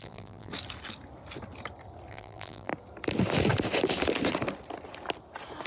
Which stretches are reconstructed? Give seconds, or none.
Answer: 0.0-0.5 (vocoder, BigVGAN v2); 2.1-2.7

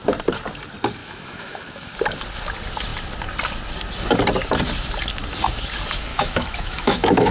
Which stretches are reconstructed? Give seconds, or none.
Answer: 1.0-1.9 (autoencoder, DAC-VAE); 6.1-7.3

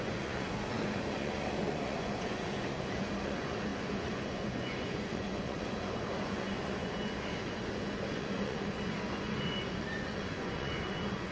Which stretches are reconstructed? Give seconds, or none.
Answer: 0.0-11.3 (vocoder, Vocos)

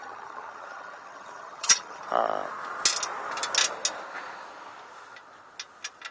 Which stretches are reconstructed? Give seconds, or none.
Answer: 0.0-2.0 (vocoder, HiFi-GAN)

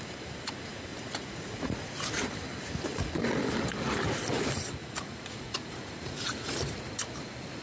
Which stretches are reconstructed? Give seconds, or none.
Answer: 0.9-1.9 (vocoder, Vocos); 4.8-6.6

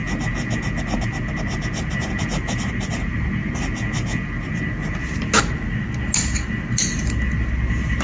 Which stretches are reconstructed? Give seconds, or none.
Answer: none

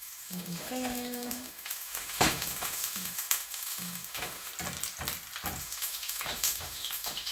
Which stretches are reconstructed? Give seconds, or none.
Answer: 0.0-4.5 (autoencoder, DAC-VAE); 5.6-7.3